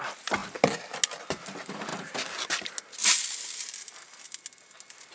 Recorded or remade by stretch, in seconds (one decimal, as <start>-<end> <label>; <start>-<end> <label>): 0.0-5.1 recorded